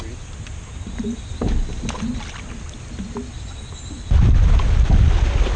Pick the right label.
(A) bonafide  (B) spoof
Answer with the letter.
A